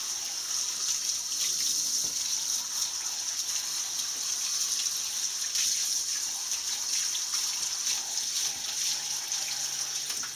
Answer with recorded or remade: recorded